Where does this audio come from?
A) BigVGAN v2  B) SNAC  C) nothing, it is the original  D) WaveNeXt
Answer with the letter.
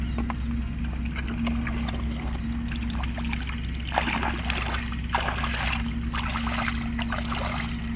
C